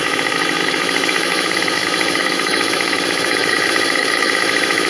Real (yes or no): no